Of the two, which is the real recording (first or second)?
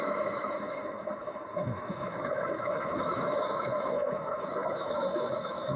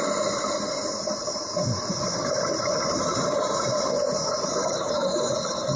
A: second